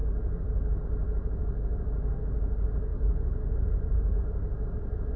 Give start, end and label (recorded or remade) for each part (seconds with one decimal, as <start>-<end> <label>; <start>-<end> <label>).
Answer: 0.0-2.9 recorded; 2.9-4.2 remade; 4.2-5.2 recorded